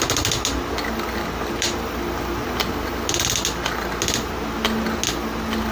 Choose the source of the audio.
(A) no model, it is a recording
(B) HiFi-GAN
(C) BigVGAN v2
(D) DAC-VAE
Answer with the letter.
A